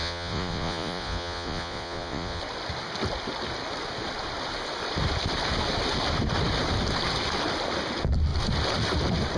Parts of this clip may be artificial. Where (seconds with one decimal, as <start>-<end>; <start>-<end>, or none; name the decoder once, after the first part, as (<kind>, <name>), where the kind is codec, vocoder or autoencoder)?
0.0-2.4 (vocoder, Vocos)